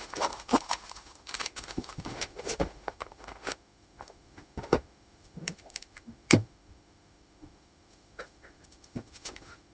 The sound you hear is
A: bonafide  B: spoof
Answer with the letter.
B